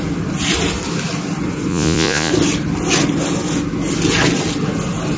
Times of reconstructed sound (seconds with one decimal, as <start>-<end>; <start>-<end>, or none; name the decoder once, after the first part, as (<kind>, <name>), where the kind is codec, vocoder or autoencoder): 1.7-2.3 (vocoder, Vocos)